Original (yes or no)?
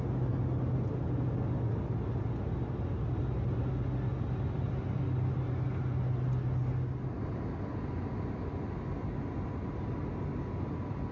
yes